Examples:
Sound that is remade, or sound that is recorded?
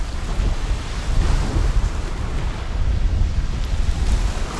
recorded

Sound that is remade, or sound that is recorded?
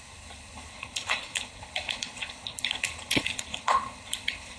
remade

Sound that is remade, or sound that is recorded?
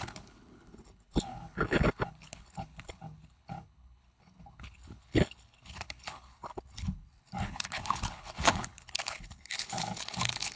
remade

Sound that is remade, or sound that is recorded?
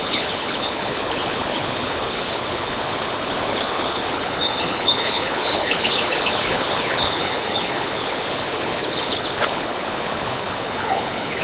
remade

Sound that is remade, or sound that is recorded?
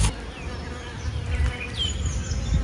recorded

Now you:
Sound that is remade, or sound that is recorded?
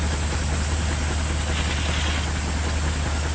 recorded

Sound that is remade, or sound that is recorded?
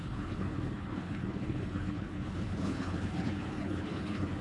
remade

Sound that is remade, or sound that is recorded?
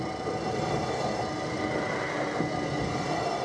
recorded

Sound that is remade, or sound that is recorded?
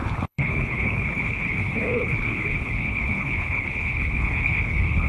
remade